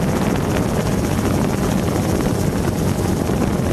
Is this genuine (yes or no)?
yes